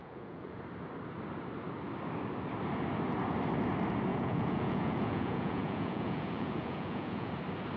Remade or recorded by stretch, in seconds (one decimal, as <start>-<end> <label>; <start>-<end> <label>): 0.0-0.6 remade; 0.6-4.1 recorded; 4.1-7.3 remade; 7.3-7.8 recorded